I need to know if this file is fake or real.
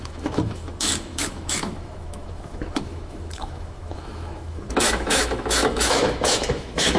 fake